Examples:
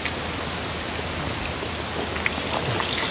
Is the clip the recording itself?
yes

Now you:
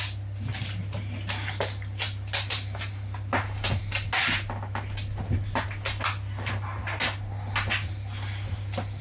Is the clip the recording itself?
yes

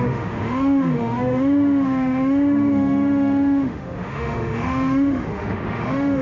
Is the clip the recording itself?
no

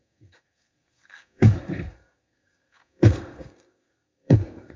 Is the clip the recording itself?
no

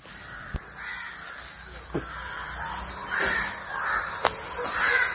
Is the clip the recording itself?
yes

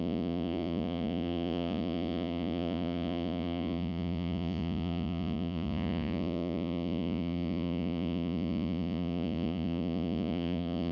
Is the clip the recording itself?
no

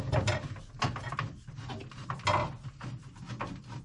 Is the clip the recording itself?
yes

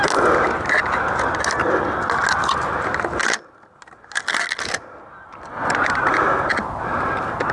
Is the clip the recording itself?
yes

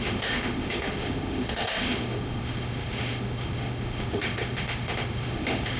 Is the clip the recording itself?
no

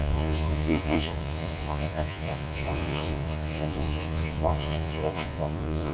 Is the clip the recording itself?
no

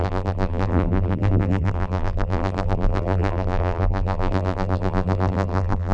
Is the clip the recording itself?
no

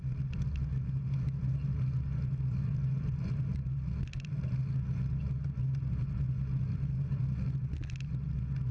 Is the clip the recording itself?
yes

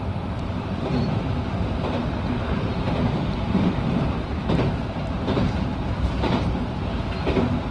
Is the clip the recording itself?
no